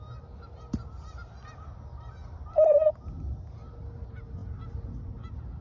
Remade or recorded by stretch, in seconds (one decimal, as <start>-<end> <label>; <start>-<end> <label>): 0.0-5.6 recorded